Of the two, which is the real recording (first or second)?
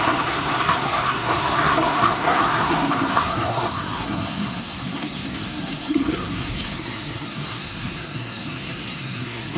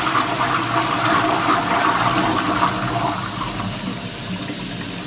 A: second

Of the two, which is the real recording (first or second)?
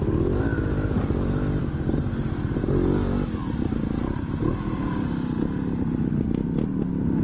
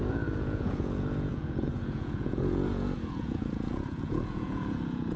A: first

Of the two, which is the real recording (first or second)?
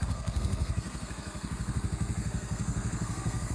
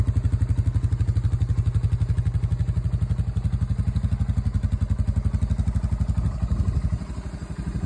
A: second